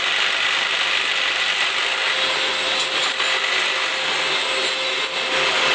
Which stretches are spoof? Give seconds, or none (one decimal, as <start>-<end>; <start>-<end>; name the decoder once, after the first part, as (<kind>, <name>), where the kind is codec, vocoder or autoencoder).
none